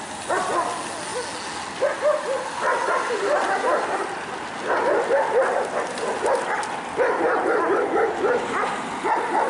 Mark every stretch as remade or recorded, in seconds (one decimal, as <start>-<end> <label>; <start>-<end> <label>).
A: 0.0-9.5 recorded